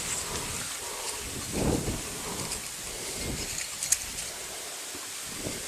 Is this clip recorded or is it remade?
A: recorded